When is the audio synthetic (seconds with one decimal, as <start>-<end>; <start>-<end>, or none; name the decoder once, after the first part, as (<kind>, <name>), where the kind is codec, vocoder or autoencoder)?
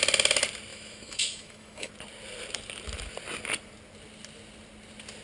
0.7-1.9 (autoencoder, DAC-VAE)